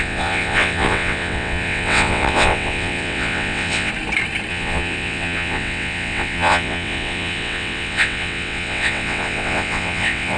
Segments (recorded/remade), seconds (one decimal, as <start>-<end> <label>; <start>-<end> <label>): 0.0-3.9 remade; 3.9-4.5 recorded; 4.5-10.4 remade